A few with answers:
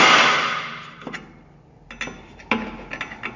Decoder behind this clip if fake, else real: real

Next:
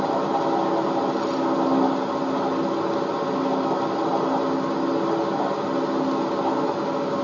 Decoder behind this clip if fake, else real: real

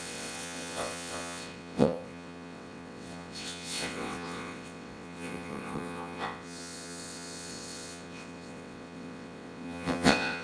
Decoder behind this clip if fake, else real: fake, vocoder, WaveNeXt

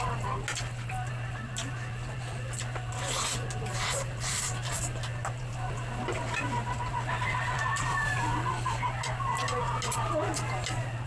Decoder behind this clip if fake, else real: real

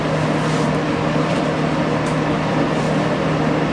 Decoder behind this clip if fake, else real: real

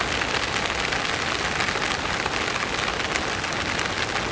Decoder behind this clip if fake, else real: real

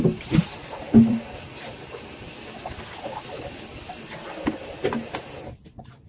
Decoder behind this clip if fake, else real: real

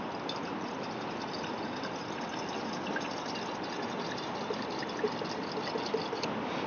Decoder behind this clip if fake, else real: real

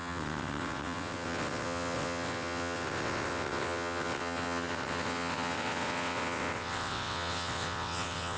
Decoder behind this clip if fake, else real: fake, vocoder, WaveNeXt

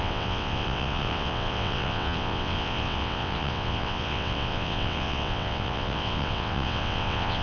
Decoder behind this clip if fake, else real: fake, vocoder, WaveNeXt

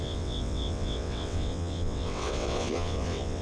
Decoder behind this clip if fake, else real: fake, vocoder, WaveNeXt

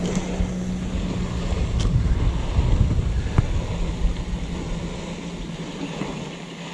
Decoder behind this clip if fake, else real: real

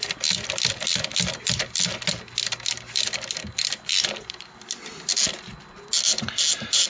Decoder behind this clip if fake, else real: real